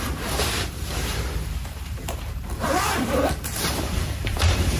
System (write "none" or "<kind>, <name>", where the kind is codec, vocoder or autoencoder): vocoder, BigVGAN v2